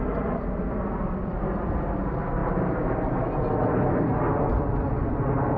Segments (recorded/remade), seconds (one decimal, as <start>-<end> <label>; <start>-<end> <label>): 0.0-5.6 recorded